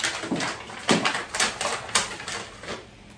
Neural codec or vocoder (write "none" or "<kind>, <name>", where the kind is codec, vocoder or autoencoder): none